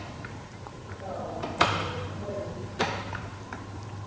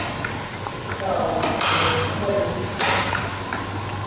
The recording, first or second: second